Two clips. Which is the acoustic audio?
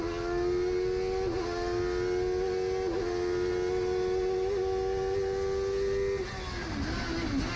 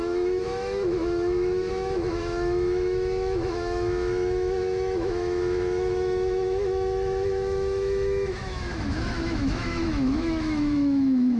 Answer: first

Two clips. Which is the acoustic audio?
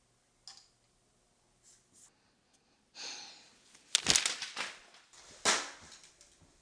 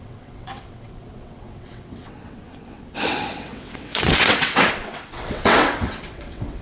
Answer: first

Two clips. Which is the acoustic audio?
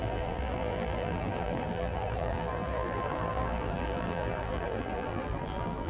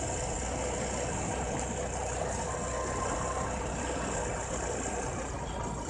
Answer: second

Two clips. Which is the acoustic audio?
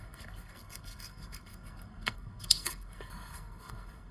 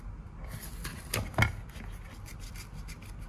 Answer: second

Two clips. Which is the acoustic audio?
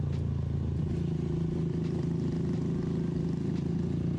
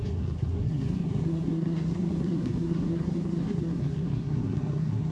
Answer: first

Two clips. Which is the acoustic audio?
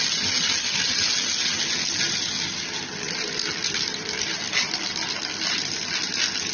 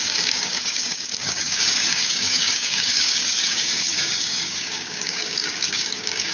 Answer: first